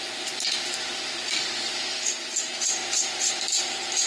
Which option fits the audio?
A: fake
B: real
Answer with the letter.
A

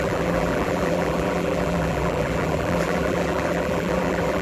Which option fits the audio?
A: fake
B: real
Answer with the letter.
A